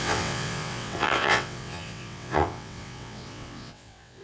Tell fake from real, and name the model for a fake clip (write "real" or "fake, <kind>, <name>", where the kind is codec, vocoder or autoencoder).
fake, vocoder, WaveNeXt